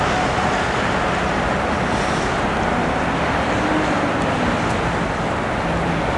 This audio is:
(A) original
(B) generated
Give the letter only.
A